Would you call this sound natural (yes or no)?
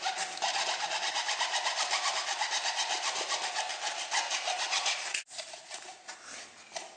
yes